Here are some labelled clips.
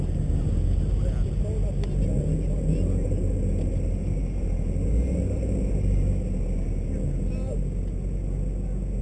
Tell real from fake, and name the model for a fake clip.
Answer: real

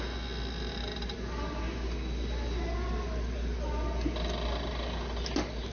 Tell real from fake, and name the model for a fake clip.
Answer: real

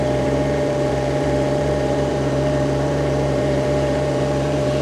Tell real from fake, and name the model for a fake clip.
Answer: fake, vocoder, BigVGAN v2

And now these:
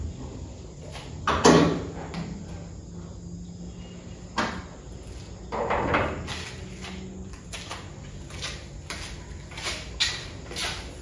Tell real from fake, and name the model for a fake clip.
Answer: real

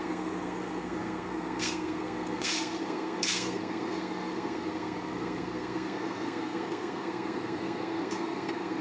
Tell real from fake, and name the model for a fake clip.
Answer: fake, codec, SNAC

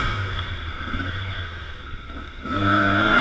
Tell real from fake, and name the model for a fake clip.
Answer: fake, codec, SNAC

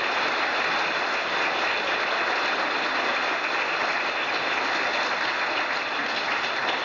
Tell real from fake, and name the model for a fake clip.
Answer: real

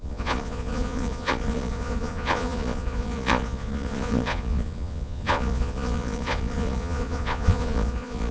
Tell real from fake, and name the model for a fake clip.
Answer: fake, vocoder, Vocos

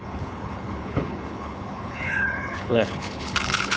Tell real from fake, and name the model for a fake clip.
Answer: fake, codec, HILCodec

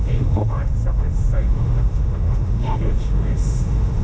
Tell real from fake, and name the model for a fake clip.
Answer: fake, autoencoder, DAC-VAE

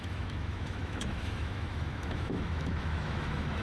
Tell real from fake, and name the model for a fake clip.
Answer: fake, autoencoder, DAC-VAE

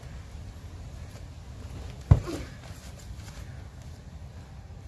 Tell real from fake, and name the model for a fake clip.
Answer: real